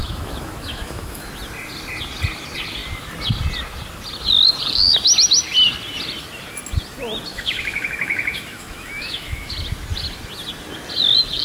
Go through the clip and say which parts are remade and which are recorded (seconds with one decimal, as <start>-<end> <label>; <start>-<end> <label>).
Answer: 0.0-1.3 remade; 1.3-7.3 recorded; 7.3-9.5 remade; 9.5-11.4 recorded